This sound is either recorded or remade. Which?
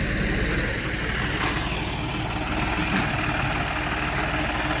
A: recorded